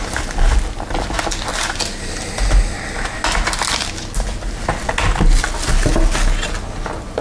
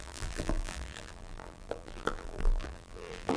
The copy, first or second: second